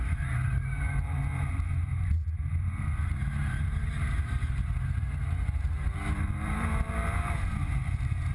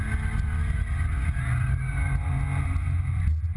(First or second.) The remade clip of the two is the first